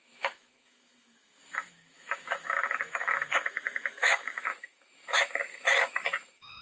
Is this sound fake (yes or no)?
yes